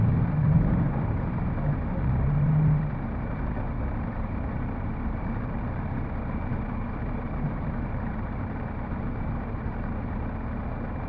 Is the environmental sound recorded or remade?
remade